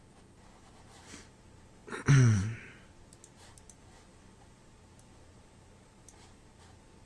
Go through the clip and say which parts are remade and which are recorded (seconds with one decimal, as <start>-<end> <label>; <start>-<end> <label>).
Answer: 0.0-7.1 recorded